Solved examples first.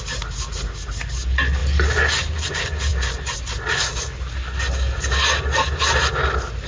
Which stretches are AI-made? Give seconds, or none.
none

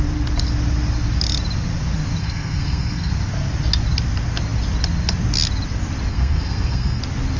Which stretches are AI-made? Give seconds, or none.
2.2-3.1; 6.1-7.0

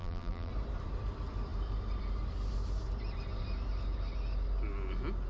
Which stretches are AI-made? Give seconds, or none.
0.0-0.5

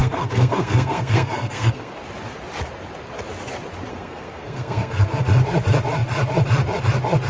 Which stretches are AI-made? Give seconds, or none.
0.0-1.9; 3.9-5.2

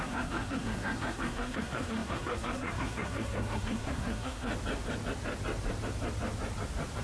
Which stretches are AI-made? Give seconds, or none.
0.0-4.5

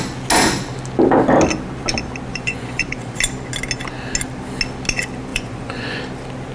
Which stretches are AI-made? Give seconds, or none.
2.3-3.2; 5.3-6.0

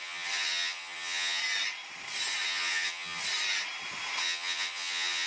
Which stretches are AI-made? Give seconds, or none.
0.0-1.4; 2.4-3.2; 4.2-5.3